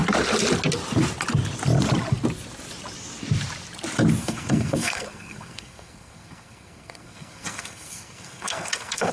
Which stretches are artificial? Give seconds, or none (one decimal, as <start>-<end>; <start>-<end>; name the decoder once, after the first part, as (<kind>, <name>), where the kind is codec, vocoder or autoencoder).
4.2-9.1 (codec, SNAC)